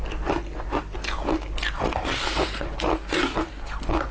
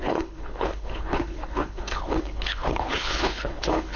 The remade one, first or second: second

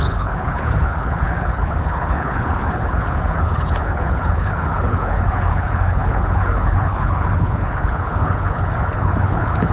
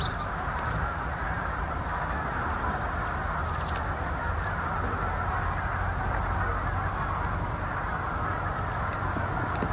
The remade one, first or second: first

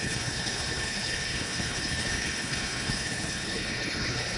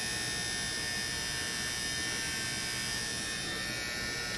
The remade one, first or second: first